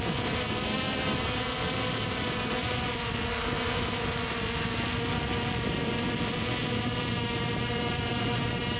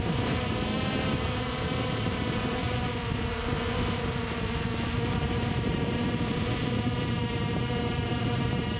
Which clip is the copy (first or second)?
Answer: second